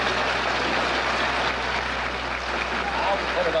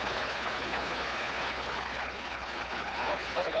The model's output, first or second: second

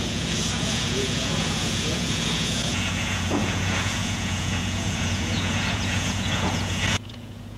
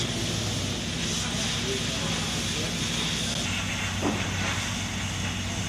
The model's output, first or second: first